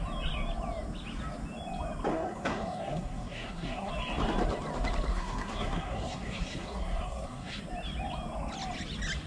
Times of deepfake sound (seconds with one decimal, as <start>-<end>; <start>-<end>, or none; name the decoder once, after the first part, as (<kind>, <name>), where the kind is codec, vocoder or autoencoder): 2.1-3.9 (codec, SNAC); 5.1-7.6